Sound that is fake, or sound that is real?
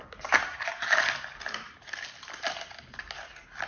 real